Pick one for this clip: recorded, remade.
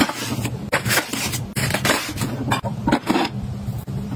remade